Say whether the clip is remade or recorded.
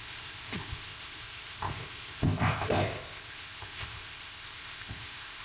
remade